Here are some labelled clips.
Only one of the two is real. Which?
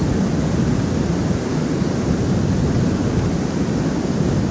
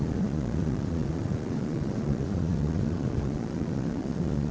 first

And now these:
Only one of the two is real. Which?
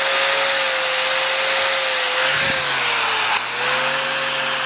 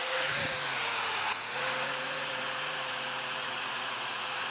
first